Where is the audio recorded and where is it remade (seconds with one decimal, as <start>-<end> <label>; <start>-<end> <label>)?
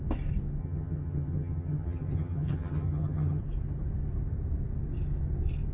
0.0-0.6 recorded; 0.6-3.4 remade; 3.4-5.7 recorded